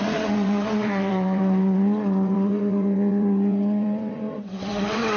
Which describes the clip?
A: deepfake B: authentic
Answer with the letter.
A